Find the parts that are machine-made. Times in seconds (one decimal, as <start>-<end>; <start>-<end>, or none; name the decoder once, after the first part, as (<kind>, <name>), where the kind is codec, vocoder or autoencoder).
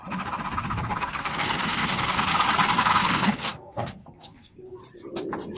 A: 1.0-2.3 (codec, SNAC); 2.8-4.8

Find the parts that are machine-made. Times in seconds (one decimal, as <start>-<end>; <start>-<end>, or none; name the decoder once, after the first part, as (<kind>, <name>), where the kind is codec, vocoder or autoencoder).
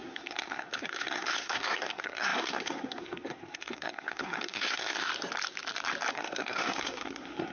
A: 0.0-5.1 (codec, SNAC); 6.1-7.5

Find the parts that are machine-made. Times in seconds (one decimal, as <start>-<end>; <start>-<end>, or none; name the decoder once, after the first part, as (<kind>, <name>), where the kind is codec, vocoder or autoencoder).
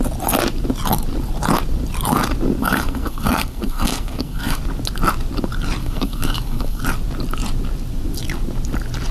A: 2.6-4.6 (codec, SNAC); 5.8-6.8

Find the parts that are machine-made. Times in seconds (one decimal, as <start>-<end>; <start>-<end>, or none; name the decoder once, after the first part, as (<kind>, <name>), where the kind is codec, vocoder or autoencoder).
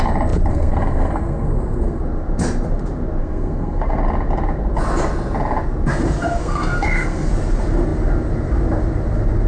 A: 0.5-2.0 (codec, SNAC); 3.2-4.0; 6.4-7.3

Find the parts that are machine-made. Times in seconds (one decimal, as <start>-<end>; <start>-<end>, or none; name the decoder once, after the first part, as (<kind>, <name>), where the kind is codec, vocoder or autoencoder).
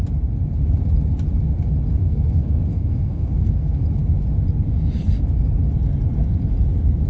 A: 2.0-3.8 (codec, SNAC)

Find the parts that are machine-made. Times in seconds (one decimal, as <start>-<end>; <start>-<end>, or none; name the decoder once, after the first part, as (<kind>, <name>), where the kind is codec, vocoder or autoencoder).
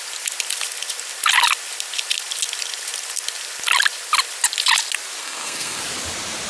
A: 5.2-5.8 (codec, SNAC)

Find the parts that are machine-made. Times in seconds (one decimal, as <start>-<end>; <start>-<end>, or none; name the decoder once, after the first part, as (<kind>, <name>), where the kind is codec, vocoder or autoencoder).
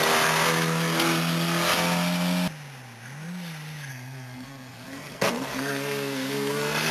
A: 3.9-6.9 (codec, SNAC)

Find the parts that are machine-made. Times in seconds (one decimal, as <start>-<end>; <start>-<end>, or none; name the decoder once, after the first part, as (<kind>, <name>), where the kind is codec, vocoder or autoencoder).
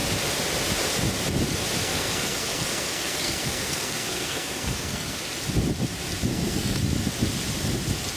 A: 1.8-5.2 (codec, SNAC); 6.3-6.8